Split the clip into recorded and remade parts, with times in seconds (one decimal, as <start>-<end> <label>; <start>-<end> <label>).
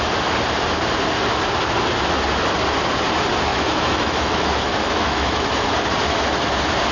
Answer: 0.0-3.5 recorded; 3.5-5.7 remade; 5.7-6.9 recorded